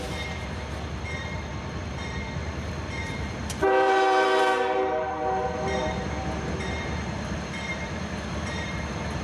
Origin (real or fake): fake